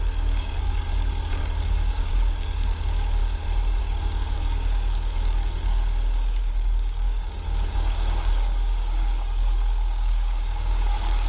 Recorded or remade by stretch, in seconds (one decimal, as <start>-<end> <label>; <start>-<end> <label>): 0.0-3.2 remade; 3.2-3.8 recorded; 3.8-11.3 remade